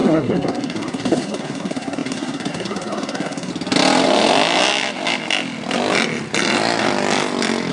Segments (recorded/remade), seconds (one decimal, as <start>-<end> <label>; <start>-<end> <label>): 0.0-3.5 remade; 3.5-7.7 recorded